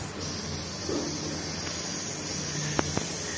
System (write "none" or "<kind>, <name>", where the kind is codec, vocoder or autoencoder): none